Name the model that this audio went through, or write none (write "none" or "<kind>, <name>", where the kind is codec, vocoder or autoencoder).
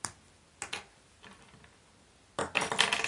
none